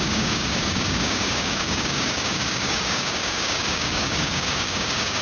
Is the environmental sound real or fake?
fake